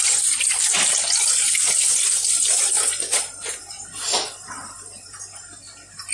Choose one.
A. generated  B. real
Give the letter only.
B